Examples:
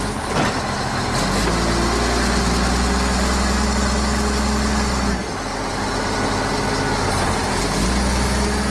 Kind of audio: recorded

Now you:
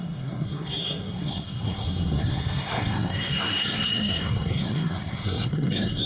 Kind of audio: remade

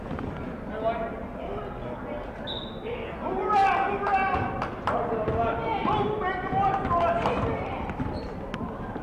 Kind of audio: recorded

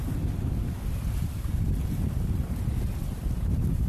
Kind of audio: recorded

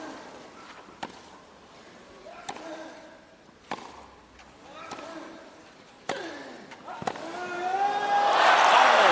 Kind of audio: recorded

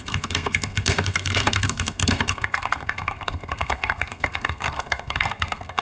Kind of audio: remade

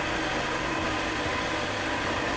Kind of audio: recorded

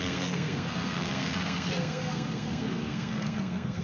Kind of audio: remade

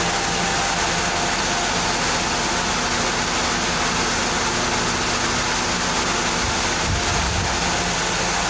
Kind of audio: recorded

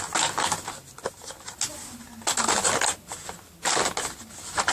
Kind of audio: recorded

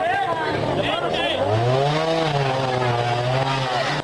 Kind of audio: recorded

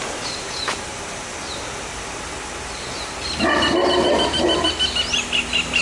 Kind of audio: recorded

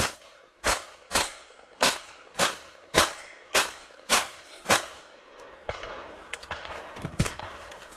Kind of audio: remade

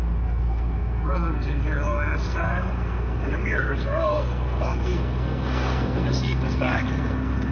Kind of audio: remade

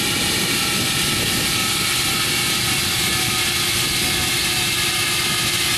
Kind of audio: recorded